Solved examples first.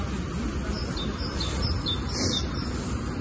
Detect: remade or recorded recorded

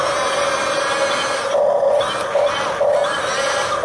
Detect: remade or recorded recorded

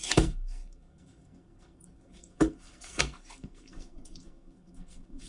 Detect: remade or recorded remade